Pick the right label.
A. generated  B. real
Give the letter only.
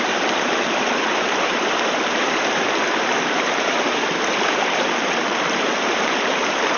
A